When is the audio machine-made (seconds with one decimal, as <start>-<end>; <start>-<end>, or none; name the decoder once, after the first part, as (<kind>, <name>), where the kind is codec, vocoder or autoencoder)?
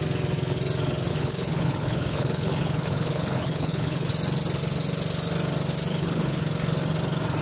1.1-4.1 (codec, HILCodec); 5.9-6.4